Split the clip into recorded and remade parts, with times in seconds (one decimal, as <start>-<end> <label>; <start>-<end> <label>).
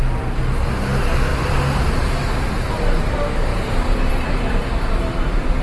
0.0-1.3 recorded; 1.3-1.9 remade; 1.9-3.5 recorded; 3.5-4.1 remade; 4.1-5.6 recorded